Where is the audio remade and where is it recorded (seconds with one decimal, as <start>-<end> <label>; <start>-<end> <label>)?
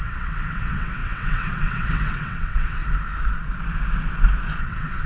0.0-2.8 remade; 2.8-4.6 recorded; 4.6-5.1 remade